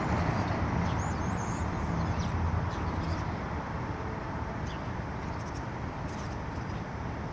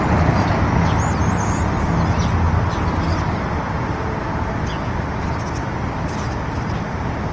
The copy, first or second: first